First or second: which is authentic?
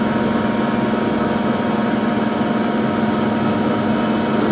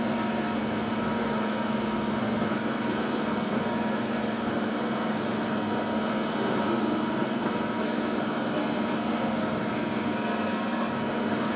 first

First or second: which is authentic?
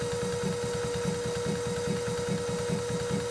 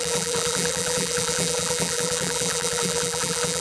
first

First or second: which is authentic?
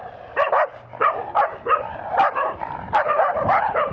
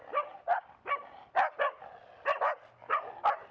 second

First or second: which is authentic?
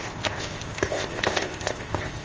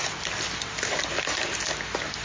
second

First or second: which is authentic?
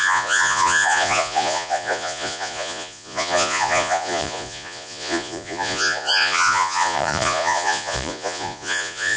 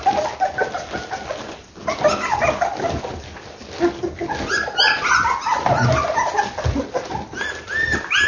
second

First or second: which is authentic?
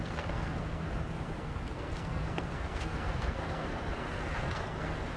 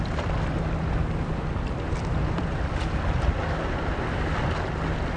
second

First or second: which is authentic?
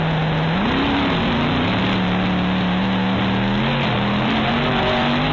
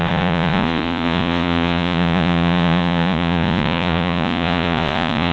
first